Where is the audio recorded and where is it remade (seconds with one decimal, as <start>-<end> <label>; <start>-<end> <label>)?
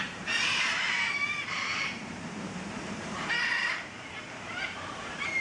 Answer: 0.0-5.4 remade